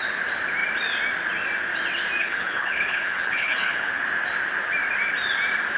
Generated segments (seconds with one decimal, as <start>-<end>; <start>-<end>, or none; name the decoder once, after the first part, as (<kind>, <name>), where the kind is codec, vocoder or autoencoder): 2.2-4.0 (codec, HILCodec)